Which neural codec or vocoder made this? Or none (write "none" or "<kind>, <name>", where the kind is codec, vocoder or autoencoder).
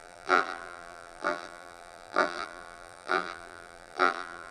vocoder, BigVGAN v2